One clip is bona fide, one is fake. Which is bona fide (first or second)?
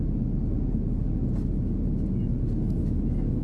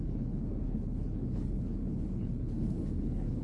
first